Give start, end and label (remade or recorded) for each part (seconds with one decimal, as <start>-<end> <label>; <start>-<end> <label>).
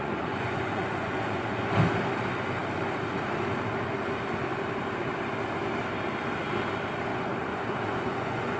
0.0-1.6 remade; 1.6-7.1 recorded; 7.1-8.6 remade